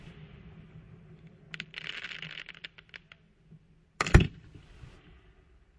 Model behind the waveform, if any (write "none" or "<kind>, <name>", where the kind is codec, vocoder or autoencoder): none